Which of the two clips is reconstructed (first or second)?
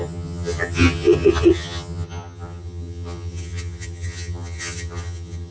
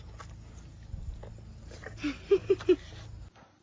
first